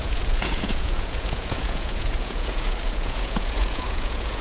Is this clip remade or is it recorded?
remade